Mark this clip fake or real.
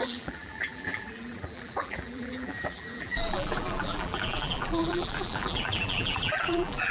fake